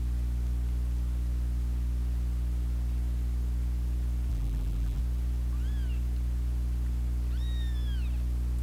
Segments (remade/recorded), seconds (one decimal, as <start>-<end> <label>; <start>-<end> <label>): 0.0-4.3 recorded; 4.3-5.0 remade; 5.0-8.6 recorded